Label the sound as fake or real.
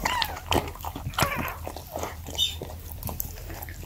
fake